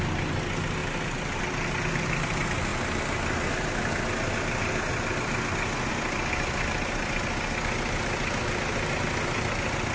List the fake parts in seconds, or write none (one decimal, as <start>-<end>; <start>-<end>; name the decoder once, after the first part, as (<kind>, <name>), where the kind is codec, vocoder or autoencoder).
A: none